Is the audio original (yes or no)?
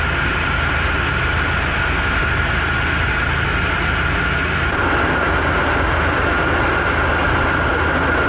yes